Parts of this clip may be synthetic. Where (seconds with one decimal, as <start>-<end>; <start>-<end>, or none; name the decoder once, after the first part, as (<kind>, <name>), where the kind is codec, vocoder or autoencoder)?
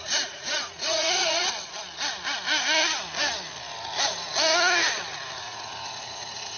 0.0-1.4 (vocoder, Vocos); 5.4-6.6